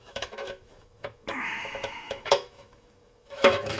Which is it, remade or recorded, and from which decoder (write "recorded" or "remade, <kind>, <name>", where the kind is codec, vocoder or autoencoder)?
remade, autoencoder, DAC-VAE